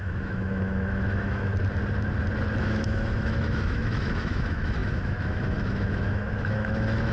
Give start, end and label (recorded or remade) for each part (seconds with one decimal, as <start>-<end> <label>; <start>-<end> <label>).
0.0-1.5 remade; 1.5-2.6 recorded; 2.6-7.1 remade